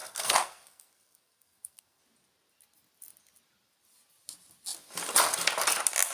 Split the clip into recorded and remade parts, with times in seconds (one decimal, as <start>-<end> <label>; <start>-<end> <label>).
0.0-2.0 remade; 2.0-6.1 recorded